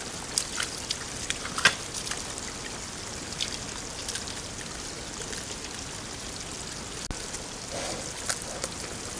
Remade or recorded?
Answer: recorded